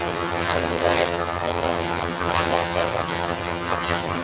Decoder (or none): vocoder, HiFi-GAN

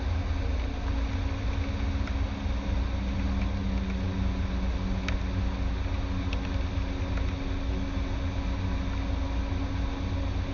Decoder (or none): none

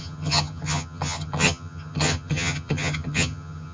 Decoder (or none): vocoder, HiFi-GAN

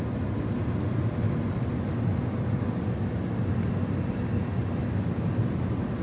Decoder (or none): none